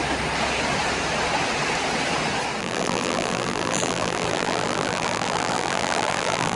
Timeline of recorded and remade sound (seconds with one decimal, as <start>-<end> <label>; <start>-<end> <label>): 0.0-2.6 recorded; 2.6-6.6 remade